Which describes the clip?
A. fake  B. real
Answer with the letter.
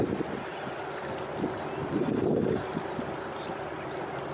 B